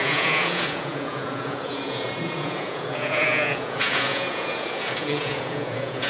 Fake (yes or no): yes